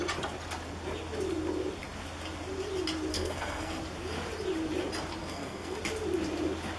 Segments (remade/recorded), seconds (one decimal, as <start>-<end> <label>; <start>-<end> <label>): 0.0-3.1 recorded; 3.1-3.8 remade; 3.8-5.2 recorded; 5.2-5.8 remade; 5.8-6.8 recorded

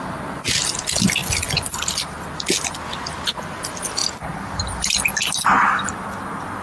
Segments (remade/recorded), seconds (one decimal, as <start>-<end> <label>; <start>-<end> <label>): 0.0-6.6 recorded